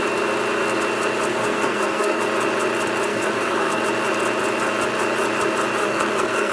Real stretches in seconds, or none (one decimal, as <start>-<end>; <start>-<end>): 0.0-1.3; 2.2-3.1; 3.8-5.8